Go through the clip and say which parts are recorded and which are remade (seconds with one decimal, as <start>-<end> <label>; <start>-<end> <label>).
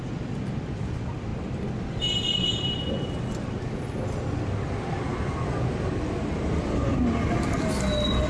0.0-8.3 recorded